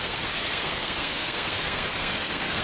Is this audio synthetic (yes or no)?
yes